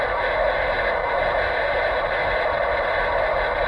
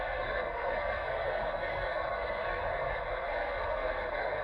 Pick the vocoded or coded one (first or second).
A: second